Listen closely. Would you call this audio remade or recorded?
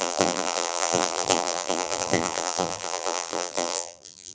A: remade